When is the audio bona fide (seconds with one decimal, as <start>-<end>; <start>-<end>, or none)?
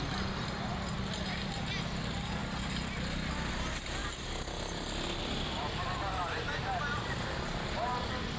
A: 0.0-8.4